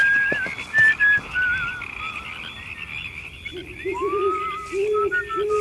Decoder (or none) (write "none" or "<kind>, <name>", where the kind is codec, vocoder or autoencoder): none